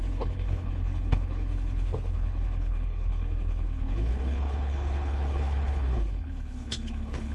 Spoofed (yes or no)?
yes